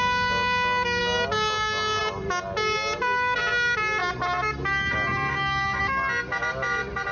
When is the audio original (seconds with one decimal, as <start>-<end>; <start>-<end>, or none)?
0.0-7.1